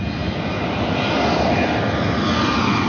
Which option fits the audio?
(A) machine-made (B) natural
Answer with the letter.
B